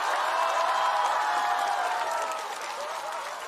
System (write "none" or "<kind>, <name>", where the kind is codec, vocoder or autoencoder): none